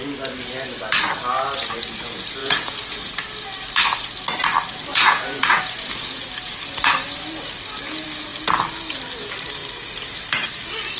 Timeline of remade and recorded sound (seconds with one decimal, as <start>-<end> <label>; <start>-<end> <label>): 0.0-2.4 recorded; 2.4-3.1 remade; 3.1-4.9 recorded; 4.9-6.2 remade; 6.2-11.0 recorded